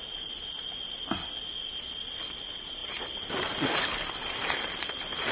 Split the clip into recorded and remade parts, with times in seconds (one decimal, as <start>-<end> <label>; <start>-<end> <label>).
0.0-5.3 recorded